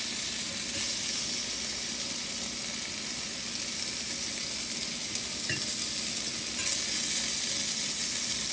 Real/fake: real